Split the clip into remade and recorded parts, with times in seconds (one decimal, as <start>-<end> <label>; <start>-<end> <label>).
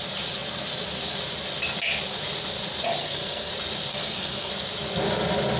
0.0-3.0 recorded; 3.0-3.5 remade; 3.5-3.9 recorded; 3.9-4.5 remade; 4.5-5.6 recorded